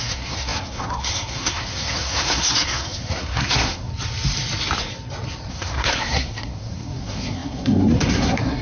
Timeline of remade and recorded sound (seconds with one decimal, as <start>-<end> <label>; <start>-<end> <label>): 0.0-3.9 remade; 3.9-5.5 recorded; 5.5-8.6 remade